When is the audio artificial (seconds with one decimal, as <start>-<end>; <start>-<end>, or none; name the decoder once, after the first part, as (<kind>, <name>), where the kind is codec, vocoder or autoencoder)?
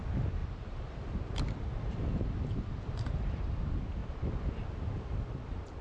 0.4-2.8 (vocoder, BigVGAN v2); 4.0-4.6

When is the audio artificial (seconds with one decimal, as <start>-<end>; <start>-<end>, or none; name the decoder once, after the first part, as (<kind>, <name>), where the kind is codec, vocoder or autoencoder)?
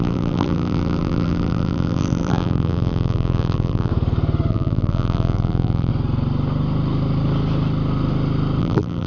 0.0-3.9 (vocoder, BigVGAN v2); 4.5-5.9; 8.6-9.1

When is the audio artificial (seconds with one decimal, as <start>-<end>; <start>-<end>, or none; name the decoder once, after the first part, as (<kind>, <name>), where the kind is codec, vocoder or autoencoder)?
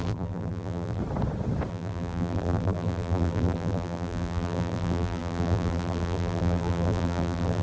0.0-1.0 (vocoder, BigVGAN v2); 1.7-7.6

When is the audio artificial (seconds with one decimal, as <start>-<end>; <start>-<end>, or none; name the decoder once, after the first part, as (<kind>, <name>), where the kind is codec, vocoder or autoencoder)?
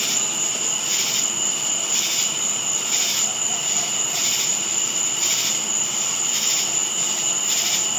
0.0-6.8 (vocoder, BigVGAN v2)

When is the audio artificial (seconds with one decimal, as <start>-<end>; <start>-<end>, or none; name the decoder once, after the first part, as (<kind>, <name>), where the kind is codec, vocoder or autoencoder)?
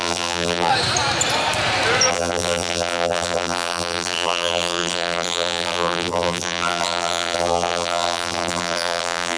0.0-0.7 (vocoder, BigVGAN v2); 2.1-9.4